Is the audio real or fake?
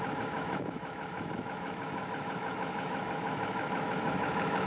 fake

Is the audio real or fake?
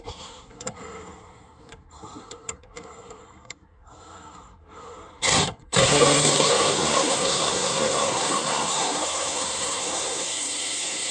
fake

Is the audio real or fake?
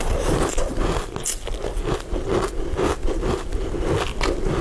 real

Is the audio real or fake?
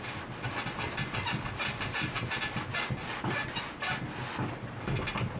real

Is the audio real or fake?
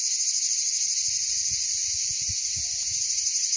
real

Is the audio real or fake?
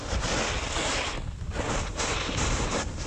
real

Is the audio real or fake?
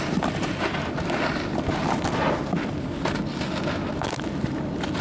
real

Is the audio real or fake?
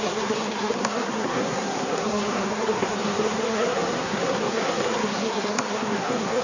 fake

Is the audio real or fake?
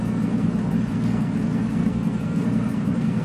fake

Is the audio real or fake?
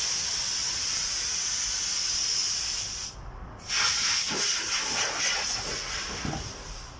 real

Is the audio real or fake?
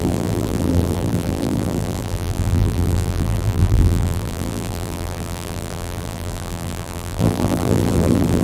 fake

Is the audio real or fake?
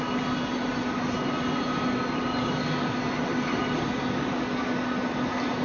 real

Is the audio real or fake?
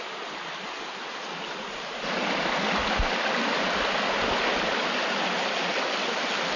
real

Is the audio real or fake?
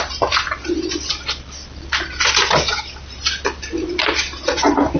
real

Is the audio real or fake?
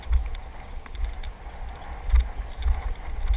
real